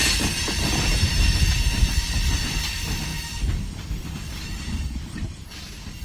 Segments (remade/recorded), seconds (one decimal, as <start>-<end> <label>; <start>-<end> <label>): 0.0-6.0 recorded